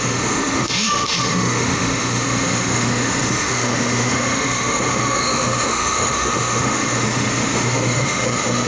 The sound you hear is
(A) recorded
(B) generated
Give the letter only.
B